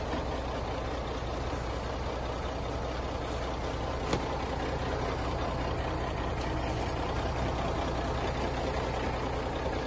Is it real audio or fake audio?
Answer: real